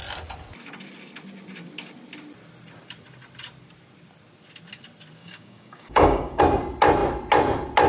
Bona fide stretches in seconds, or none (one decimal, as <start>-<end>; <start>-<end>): 0.0-5.2; 6.4-7.9